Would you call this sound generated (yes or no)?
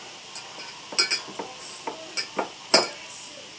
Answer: no